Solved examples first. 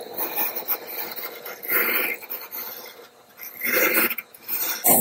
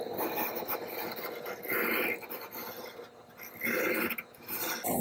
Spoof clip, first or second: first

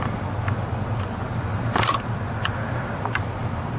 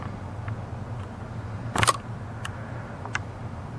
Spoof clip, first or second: first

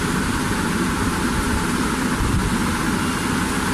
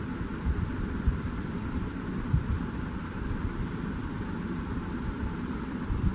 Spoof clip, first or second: second